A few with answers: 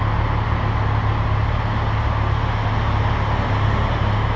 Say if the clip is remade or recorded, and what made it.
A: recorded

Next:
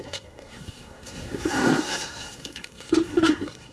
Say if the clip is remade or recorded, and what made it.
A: remade, codec, SNAC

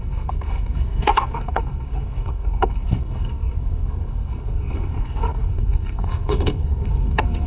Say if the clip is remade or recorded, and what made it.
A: remade, codec, SNAC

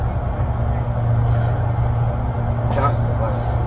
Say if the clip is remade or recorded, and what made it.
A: recorded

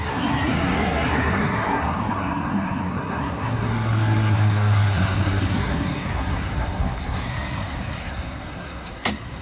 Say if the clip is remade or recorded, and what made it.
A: remade, codec, SNAC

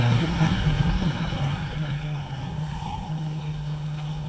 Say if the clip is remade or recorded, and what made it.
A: remade, codec, SNAC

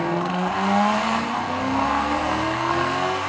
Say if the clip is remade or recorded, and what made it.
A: remade, codec, SNAC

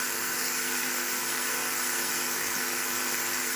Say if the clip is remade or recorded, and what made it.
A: remade, codec, SNAC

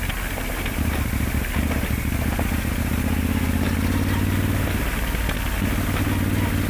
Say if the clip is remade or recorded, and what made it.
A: recorded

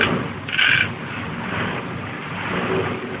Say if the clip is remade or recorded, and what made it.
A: recorded